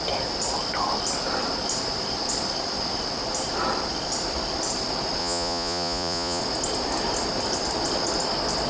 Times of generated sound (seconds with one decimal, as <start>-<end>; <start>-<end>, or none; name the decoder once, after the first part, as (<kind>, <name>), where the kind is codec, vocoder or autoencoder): 5.2-6.4 (vocoder, Vocos)